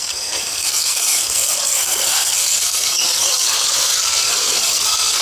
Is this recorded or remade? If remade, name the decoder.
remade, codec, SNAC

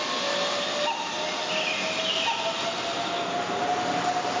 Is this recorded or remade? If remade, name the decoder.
recorded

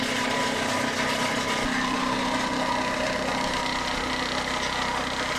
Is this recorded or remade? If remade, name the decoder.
recorded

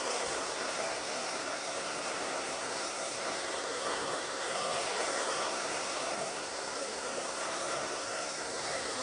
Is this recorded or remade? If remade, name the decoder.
remade, codec, SNAC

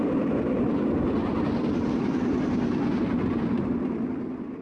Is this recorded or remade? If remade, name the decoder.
recorded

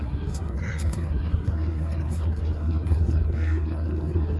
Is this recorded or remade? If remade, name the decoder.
remade, codec, SNAC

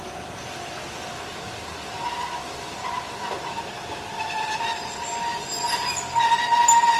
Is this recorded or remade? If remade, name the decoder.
recorded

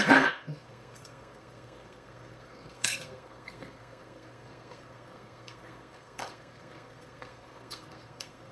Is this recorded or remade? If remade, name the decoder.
remade, codec, SNAC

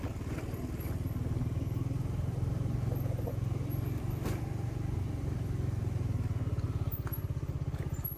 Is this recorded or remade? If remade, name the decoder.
recorded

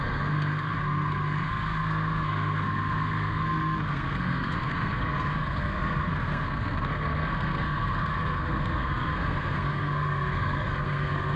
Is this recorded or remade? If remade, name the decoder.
remade, codec, SNAC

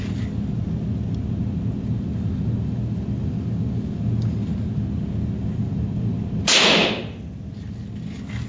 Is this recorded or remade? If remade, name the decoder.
recorded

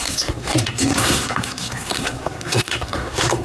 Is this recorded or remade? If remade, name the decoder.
remade, codec, SNAC